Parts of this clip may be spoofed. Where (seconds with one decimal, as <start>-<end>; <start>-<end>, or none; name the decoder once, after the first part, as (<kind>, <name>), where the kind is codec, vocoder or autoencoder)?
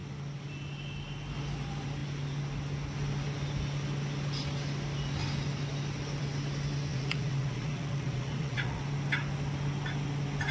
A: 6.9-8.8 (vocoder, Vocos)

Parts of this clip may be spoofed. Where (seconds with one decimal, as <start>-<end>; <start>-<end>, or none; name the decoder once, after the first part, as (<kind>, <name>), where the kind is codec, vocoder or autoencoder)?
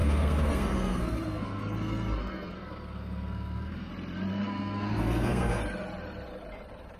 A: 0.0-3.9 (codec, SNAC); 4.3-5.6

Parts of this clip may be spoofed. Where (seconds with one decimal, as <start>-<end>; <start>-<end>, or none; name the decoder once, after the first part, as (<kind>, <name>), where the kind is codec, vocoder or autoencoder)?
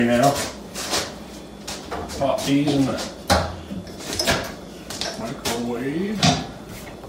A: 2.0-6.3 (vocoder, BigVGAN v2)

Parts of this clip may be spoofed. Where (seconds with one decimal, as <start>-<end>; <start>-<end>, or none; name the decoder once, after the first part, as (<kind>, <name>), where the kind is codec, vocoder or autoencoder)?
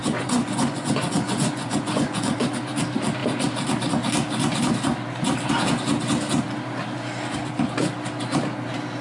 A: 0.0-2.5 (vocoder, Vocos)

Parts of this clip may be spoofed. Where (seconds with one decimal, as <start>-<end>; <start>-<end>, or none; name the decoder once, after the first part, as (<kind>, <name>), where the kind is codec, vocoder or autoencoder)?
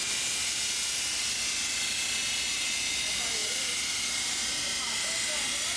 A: none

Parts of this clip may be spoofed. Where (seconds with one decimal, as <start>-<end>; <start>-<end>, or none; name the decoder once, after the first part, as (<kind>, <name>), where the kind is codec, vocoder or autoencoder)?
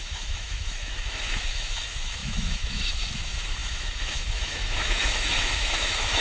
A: 0.0-6.2 (autoencoder, DAC-VAE)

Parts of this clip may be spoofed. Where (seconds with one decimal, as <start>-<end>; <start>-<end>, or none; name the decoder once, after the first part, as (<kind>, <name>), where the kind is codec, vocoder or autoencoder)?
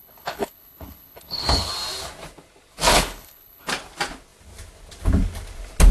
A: 0.0-1.7 (codec, HILCodec); 2.9-3.7